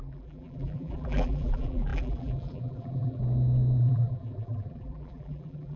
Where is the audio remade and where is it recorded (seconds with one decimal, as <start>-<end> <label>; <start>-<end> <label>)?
0.0-3.2 remade; 3.2-3.8 recorded; 3.8-5.8 remade